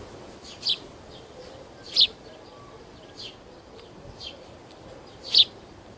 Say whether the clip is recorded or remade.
remade